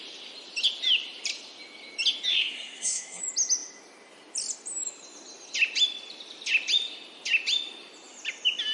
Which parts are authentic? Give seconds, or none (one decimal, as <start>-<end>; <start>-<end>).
0.0-2.3; 3.2-8.7